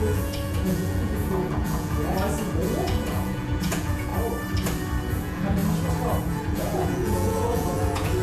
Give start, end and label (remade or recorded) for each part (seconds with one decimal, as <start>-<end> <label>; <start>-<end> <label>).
0.0-4.1 remade; 4.1-5.1 recorded; 5.1-5.6 remade; 5.6-6.2 recorded; 6.2-8.2 remade